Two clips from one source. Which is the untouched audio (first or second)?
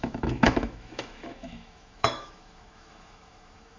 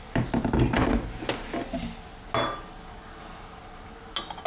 second